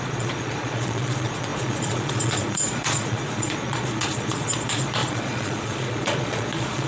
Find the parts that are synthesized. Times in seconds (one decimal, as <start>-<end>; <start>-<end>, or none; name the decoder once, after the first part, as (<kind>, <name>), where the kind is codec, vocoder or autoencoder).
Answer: 0.0-6.9 (vocoder, Vocos)